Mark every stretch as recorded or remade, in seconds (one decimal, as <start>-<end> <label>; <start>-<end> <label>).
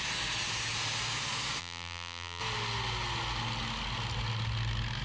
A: 0.0-1.6 recorded; 1.6-2.4 remade; 2.4-5.0 recorded